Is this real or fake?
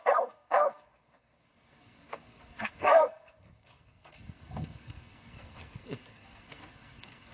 fake